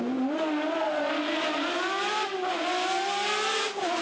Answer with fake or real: real